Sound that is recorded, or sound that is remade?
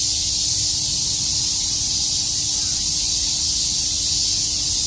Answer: recorded